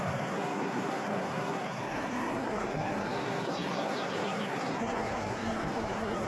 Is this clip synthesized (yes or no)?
yes